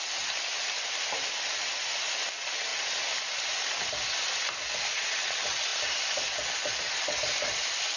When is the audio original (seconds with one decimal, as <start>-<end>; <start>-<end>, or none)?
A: 0.0-8.0